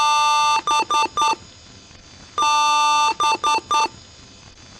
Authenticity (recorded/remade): recorded